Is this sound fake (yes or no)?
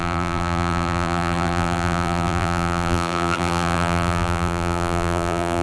yes